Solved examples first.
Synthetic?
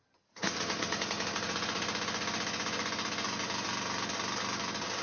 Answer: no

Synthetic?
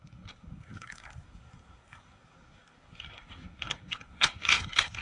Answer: yes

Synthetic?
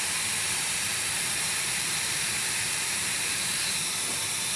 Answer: yes